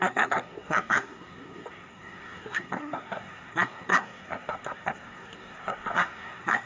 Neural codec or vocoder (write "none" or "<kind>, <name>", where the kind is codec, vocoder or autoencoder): codec, SNAC